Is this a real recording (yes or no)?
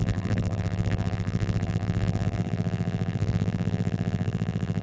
no